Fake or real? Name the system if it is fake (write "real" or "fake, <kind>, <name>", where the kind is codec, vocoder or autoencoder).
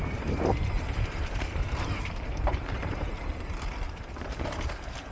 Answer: fake, vocoder, BigVGAN v2